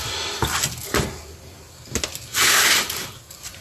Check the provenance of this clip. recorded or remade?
recorded